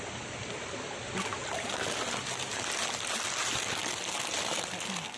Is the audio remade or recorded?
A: recorded